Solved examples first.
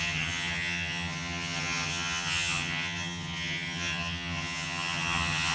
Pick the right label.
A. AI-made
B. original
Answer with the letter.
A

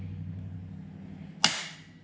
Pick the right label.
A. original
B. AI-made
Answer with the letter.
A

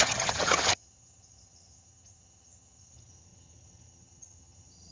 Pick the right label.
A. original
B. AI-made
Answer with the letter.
B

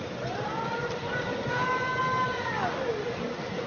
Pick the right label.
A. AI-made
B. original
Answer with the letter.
B